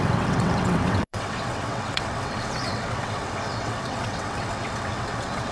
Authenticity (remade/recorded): remade